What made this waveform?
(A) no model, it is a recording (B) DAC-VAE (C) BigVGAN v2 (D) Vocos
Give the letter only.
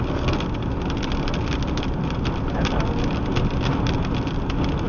A